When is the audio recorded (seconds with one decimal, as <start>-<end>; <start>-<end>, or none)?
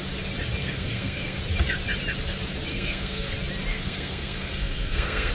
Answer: 0.0-0.6; 1.4-2.7; 3.3-3.7